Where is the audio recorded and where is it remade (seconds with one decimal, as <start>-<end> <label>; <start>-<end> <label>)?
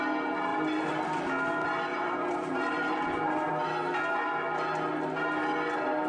0.0-0.5 recorded; 0.5-1.0 remade; 1.0-1.9 recorded; 1.9-3.5 remade; 3.5-6.1 recorded